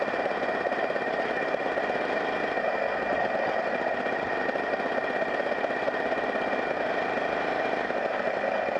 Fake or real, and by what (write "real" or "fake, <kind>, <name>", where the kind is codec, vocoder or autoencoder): real